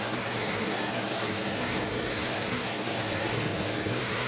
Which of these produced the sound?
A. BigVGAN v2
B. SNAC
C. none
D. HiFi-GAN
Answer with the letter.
B